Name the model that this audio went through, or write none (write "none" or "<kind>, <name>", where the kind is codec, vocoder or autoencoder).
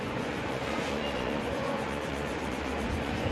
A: vocoder, Vocos